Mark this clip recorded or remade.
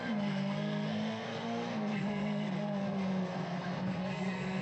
remade